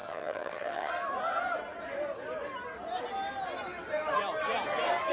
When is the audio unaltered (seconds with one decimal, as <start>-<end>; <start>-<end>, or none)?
0.9-5.1